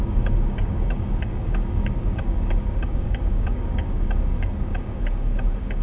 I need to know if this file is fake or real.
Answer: fake